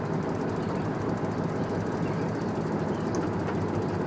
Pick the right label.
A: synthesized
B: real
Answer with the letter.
B